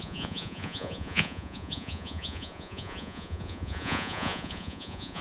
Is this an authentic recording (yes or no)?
no